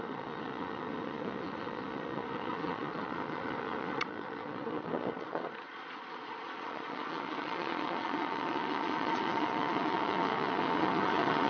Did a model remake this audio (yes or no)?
yes